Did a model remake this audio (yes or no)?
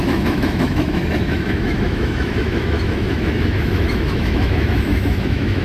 yes